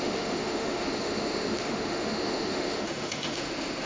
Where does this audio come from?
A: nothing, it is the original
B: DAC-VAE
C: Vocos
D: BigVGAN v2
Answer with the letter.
B